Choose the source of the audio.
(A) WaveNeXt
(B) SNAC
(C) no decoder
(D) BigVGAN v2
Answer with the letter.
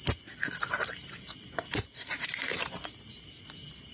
D